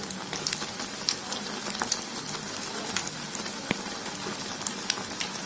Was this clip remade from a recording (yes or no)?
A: no